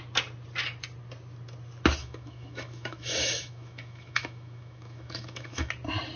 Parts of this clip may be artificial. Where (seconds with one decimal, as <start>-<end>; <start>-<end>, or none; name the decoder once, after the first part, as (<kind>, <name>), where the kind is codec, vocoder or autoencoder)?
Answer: 2.0-5.7 (autoencoder, DAC-VAE)